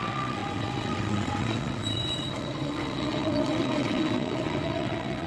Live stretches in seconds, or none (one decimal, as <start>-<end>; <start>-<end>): none